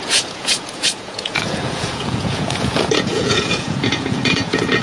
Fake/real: fake